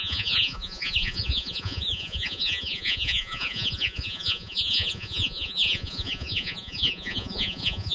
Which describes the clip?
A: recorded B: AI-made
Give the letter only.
B